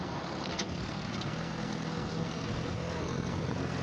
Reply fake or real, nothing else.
fake